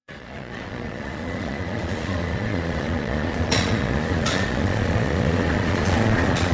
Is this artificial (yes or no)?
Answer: yes